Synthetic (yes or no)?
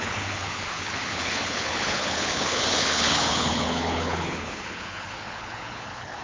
yes